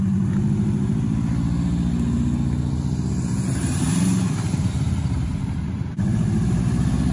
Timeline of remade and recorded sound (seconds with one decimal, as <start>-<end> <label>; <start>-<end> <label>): 0.0-0.9 remade; 0.9-3.1 recorded; 3.1-7.1 remade